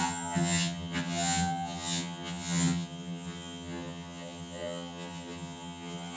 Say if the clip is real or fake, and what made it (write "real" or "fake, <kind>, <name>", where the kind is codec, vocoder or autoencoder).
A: fake, vocoder, HiFi-GAN